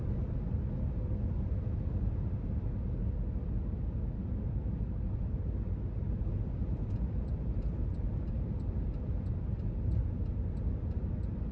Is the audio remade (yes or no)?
no